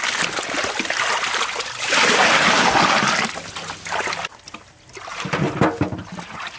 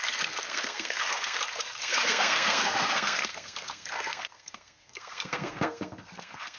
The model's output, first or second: second